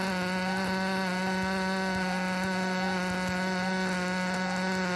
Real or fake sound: real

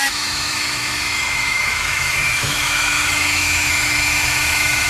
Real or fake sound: fake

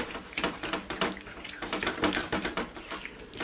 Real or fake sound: fake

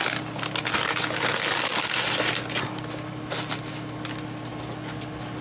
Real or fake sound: real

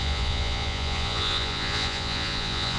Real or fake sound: fake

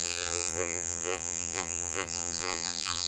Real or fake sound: fake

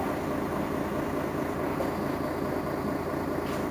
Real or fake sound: real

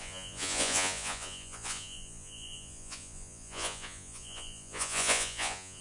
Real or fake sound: fake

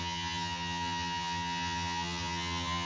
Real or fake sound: fake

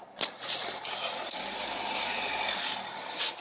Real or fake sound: real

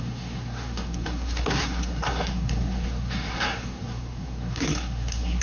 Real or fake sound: fake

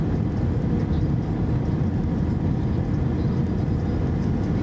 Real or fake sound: real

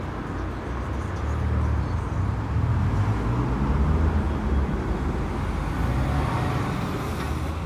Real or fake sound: real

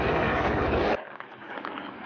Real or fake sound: fake